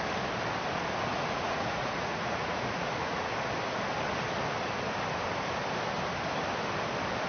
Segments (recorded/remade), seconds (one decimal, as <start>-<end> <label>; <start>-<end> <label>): 0.0-1.1 recorded; 1.1-3.3 remade; 3.3-7.3 recorded

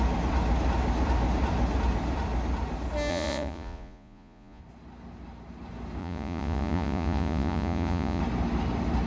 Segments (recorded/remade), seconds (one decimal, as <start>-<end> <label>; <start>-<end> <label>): 0.0-3.1 recorded; 3.1-4.6 remade; 4.6-6.0 recorded; 6.0-8.2 remade; 8.2-9.1 recorded

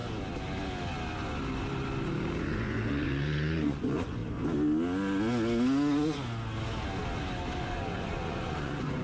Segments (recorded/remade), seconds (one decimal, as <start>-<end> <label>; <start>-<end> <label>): 0.0-2.4 recorded; 2.4-4.2 remade; 4.2-7.6 recorded; 7.6-9.0 remade

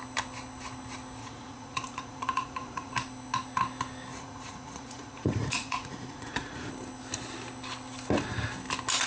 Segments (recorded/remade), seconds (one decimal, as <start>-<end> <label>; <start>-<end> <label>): 0.0-1.2 recorded; 1.2-2.9 remade; 2.9-4.1 recorded; 4.1-6.7 remade; 6.7-9.1 recorded